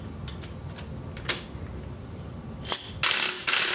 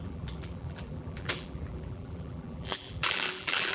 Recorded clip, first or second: first